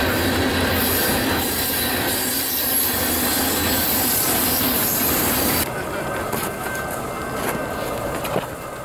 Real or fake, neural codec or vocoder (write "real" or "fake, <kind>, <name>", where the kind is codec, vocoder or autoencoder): real